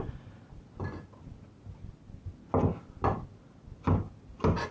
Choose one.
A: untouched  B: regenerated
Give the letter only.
A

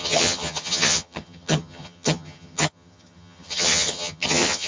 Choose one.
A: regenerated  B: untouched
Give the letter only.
A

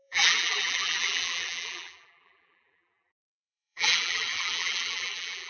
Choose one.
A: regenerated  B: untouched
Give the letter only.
A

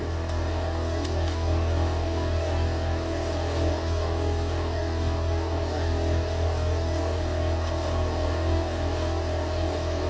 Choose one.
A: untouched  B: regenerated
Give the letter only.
B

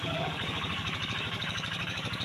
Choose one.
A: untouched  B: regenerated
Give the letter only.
B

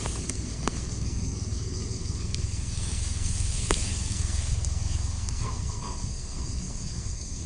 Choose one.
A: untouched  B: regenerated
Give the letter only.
B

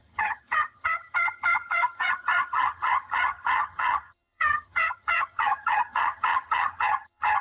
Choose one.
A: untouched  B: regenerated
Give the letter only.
B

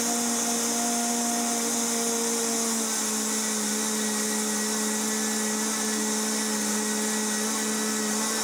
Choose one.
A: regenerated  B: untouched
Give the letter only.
B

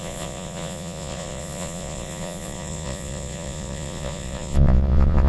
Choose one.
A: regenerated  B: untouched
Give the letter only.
A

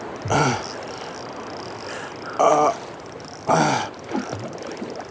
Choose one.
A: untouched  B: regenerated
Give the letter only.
A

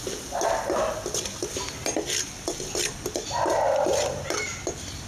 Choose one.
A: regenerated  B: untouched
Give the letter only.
B